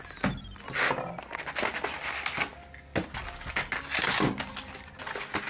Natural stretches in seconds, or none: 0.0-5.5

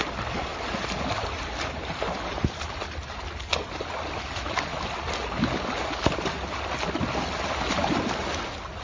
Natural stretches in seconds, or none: 0.0-8.8

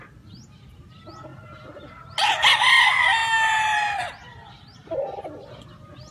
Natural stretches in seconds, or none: 0.0-6.1